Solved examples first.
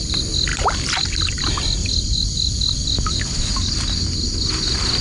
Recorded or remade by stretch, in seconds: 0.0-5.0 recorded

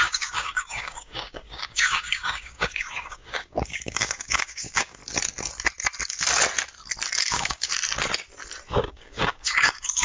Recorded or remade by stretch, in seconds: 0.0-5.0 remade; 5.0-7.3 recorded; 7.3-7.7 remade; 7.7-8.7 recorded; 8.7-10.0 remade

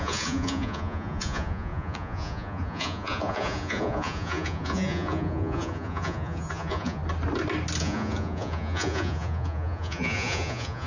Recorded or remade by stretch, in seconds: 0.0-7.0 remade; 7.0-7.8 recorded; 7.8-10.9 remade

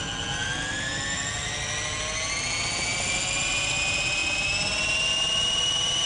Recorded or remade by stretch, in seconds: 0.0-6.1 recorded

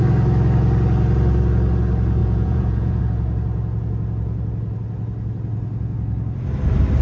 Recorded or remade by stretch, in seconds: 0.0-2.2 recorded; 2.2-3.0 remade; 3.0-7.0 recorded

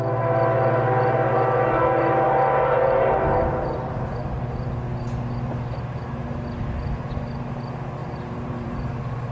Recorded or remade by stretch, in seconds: 0.0-8.0 recorded; 8.0-8.9 remade; 8.9-9.3 recorded

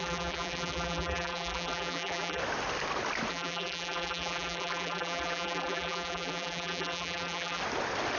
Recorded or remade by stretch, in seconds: 0.0-2.4 remade; 2.4-3.3 recorded; 3.3-7.6 remade; 7.6-8.2 recorded

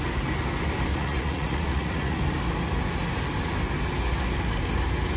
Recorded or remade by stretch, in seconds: 0.0-0.9 recorded; 0.9-2.2 remade; 2.2-5.2 recorded